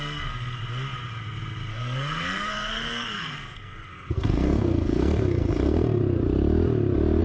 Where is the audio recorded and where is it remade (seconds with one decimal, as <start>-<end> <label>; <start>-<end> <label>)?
0.0-0.6 remade; 0.6-1.7 recorded; 1.7-6.0 remade; 6.0-7.2 recorded